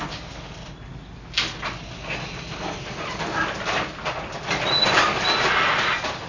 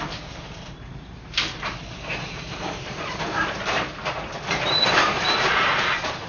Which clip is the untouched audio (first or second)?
first